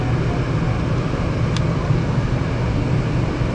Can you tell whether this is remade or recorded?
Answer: recorded